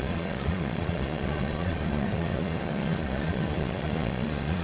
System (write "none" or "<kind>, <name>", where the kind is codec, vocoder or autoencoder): vocoder, Vocos